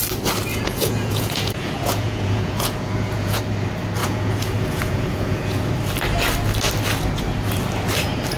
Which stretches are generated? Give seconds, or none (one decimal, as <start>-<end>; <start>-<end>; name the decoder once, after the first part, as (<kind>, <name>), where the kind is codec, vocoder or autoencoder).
0.5-3.4 (vocoder, Vocos); 4.0-5.7